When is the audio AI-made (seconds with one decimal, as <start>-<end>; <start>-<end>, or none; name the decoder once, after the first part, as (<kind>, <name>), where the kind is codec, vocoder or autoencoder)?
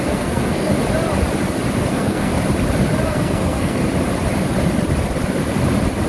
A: 0.0-0.7 (codec, SNAC); 1.9-2.3; 3.1-3.8